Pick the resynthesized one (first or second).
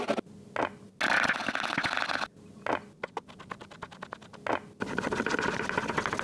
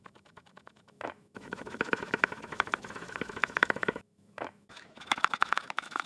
second